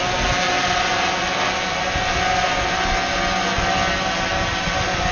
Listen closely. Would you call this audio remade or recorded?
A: recorded